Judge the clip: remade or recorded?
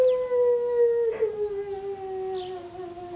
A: recorded